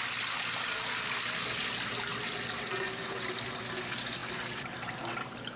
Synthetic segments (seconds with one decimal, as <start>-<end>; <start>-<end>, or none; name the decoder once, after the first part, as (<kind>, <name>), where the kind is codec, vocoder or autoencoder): none